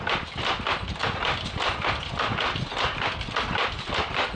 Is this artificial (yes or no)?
no